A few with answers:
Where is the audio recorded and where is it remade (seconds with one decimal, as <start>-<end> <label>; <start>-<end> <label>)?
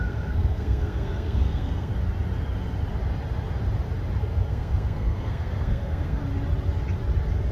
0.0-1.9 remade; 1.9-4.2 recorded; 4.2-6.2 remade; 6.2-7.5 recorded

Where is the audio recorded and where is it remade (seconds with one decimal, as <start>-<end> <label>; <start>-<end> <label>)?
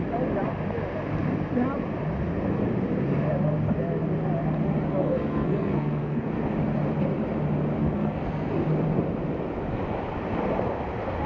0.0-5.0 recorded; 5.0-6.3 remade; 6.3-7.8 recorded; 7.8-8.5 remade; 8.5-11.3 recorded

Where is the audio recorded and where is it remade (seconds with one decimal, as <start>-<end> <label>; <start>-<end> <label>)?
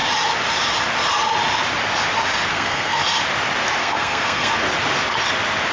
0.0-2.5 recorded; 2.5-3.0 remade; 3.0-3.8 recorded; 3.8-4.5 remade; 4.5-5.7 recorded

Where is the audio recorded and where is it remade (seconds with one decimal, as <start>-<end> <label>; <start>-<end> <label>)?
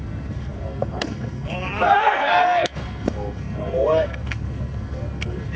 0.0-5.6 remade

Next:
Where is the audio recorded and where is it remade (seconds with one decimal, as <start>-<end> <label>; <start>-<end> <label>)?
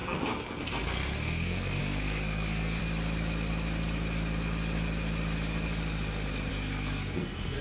0.0-2.8 remade; 2.8-6.5 recorded; 6.5-7.6 remade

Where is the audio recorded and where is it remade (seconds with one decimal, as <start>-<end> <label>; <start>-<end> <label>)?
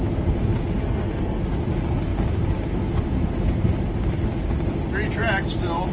0.0-0.8 recorded; 0.8-1.4 remade; 1.4-5.9 recorded